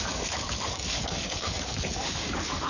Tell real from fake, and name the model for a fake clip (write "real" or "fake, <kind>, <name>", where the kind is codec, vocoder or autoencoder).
fake, codec, DAC